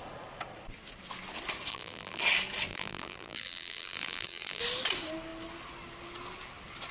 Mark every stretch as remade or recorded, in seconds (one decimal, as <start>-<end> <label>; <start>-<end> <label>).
0.0-1.7 recorded; 1.7-2.2 remade; 2.2-2.7 recorded; 2.7-4.6 remade; 4.6-6.9 recorded